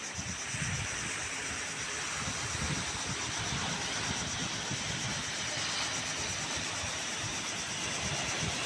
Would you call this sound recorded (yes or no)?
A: yes